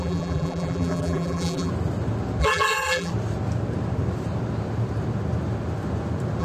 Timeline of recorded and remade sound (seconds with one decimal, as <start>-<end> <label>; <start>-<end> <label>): 0.0-1.7 remade; 1.7-2.4 recorded; 2.4-3.1 remade; 3.1-6.4 recorded